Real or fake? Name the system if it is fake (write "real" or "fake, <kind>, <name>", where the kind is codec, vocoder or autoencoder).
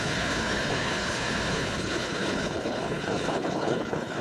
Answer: fake, codec, HILCodec